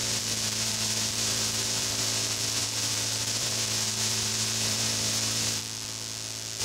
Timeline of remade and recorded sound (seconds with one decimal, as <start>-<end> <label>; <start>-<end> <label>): 0.0-5.6 remade; 5.6-6.6 recorded

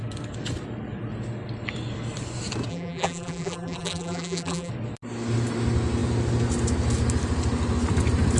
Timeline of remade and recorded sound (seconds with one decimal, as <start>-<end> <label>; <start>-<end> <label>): 0.0-2.7 recorded; 2.7-4.7 remade; 4.7-8.4 recorded

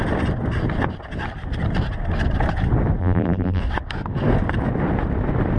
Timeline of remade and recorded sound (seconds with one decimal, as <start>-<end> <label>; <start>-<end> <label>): 0.0-3.0 recorded; 3.0-3.6 remade; 3.6-5.6 recorded